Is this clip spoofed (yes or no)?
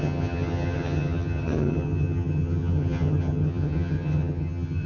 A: yes